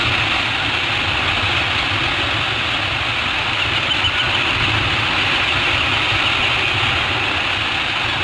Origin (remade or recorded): recorded